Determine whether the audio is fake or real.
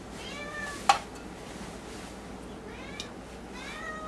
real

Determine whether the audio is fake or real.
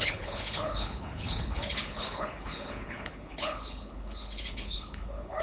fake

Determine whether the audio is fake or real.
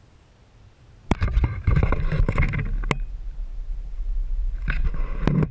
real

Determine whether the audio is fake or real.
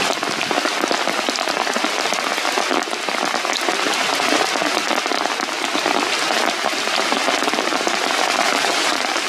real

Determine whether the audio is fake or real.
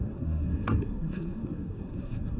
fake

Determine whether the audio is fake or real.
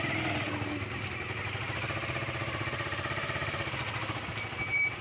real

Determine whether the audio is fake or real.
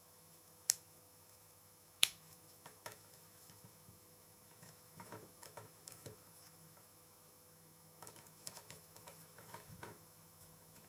fake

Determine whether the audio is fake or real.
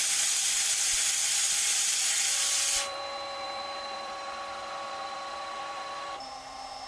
fake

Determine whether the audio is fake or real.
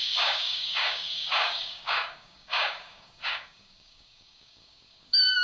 fake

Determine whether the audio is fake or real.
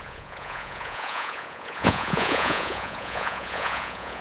fake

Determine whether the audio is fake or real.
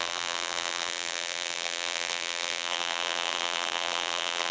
fake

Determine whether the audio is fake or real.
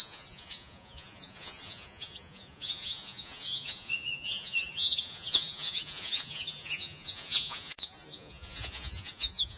fake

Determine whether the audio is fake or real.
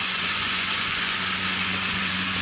fake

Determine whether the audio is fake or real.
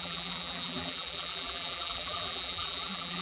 fake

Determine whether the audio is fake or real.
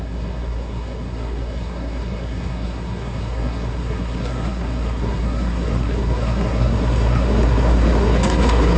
fake